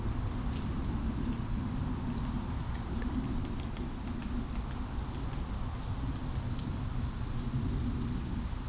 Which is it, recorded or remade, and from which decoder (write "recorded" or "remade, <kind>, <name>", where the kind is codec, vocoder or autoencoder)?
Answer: recorded